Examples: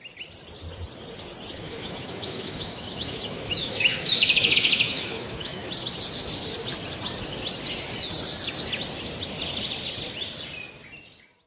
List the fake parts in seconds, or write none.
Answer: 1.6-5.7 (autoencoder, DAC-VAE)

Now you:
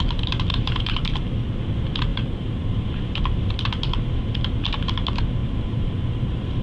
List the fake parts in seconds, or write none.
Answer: 0.5-1.3 (vocoder, BigVGAN v2); 2.1-3.2; 5.4-6.6

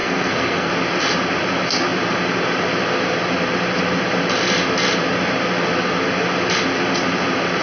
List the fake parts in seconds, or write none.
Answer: 0.0-0.7 (codec, SNAC)

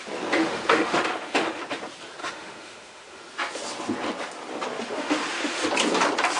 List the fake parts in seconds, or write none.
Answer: 0.4-1.6 (autoencoder, DAC-VAE); 2.2-3.2; 4.7-5.6

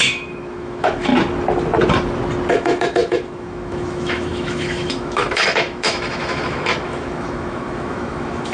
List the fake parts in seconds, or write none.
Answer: 0.0-1.1 (autoencoder, DAC-VAE); 2.5-8.5

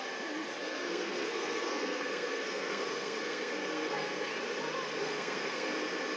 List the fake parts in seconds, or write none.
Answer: 0.6-4.3 (codec, SNAC); 5.0-5.7

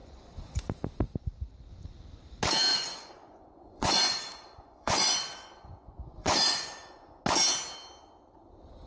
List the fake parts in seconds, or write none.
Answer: 0.0-0.6 (vocoder, Vocos); 2.7-7.2

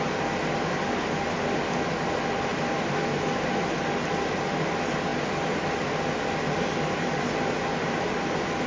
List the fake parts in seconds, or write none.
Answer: none